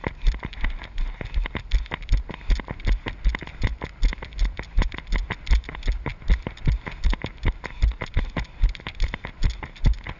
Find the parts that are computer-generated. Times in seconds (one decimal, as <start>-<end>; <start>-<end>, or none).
none